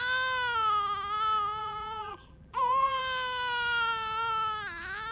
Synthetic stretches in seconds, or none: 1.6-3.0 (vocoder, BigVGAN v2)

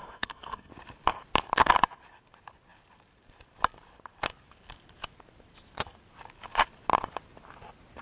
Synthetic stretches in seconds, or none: 0.0-0.7 (codec, SNAC)

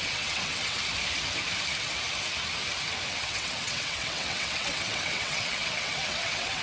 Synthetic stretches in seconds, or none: 0.0-0.8 (vocoder, WaveNeXt); 3.1-6.6

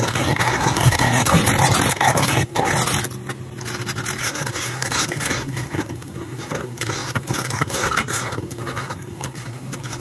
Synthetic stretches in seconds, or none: 0.0-1.4 (codec, SNAC); 1.9-2.7; 4.2-10.0

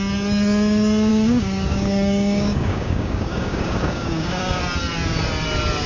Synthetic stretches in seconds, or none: 1.1-4.6 (codec, DAC)

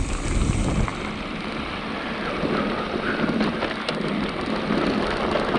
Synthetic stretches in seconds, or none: none

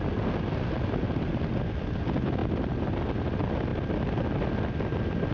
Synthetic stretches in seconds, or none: none

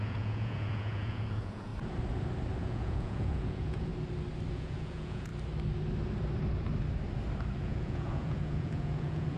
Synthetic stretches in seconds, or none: 0.0-1.7 (vocoder, Vocos); 2.6-3.9; 4.5-5.3; 7.6-9.4